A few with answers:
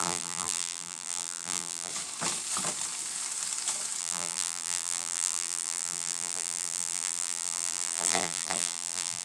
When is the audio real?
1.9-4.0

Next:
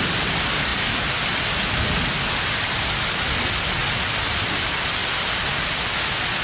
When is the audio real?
0.0-0.7; 3.4-6.4